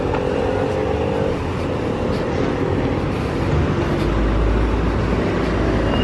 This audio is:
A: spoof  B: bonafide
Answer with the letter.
B